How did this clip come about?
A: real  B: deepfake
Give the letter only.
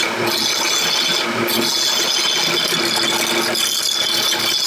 A